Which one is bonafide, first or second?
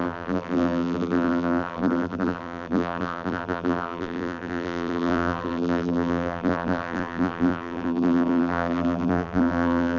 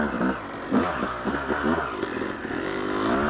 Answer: second